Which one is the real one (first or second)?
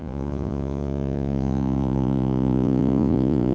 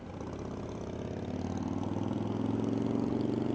second